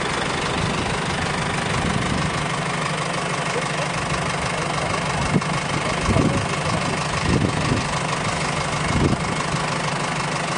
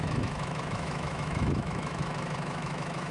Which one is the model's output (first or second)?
second